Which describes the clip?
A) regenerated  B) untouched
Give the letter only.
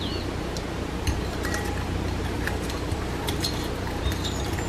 B